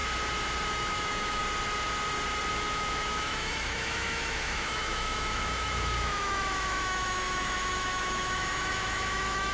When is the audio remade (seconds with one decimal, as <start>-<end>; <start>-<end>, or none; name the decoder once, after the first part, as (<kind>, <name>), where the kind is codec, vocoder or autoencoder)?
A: 0.7-1.4 (autoencoder, DAC-VAE); 2.5-9.5